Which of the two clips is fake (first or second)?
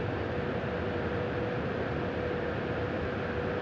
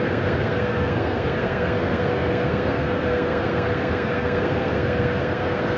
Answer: second